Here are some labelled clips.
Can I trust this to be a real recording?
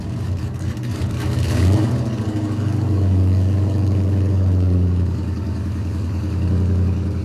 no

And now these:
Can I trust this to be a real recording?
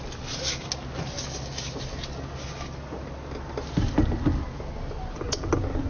yes